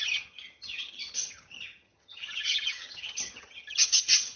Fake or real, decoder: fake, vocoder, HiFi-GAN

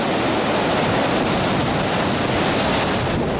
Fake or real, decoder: real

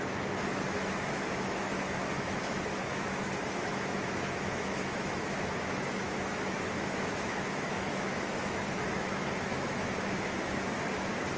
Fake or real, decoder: fake, autoencoder, DAC-VAE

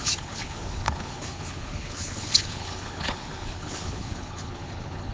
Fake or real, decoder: fake, codec, HILCodec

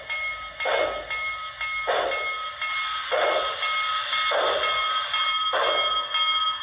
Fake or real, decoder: real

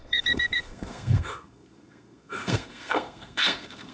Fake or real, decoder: fake, codec, SNAC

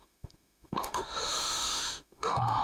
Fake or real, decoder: fake, autoencoder, DAC-VAE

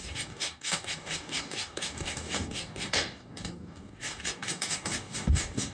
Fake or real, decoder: fake, codec, DAC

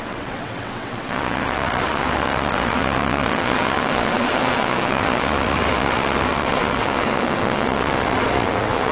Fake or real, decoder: fake, vocoder, WaveNeXt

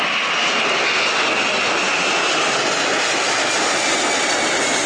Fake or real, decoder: real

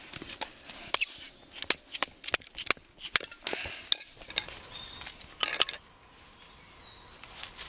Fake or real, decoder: real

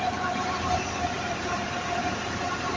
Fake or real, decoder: fake, vocoder, BigVGAN v2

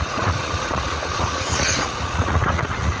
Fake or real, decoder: fake, vocoder, Vocos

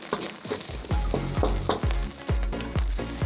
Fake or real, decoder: real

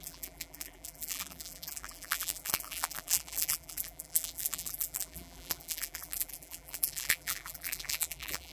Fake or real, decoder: fake, vocoder, BigVGAN v2